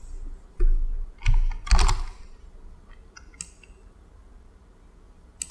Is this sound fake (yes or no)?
no